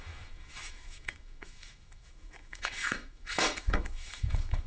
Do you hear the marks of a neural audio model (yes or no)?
yes